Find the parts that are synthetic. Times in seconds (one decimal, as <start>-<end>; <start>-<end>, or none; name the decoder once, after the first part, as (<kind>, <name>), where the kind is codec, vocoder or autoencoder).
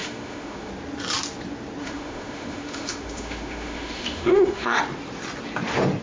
0.0-0.7 (autoencoder, DAC-VAE); 1.8-4.8